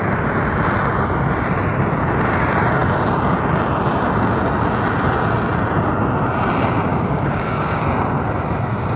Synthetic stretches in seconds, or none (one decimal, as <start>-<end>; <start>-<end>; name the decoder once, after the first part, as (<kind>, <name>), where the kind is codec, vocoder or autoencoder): 6.9-7.8 (codec, DAC)